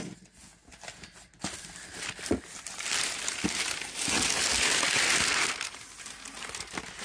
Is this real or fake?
real